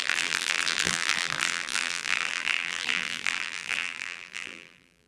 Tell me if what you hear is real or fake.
fake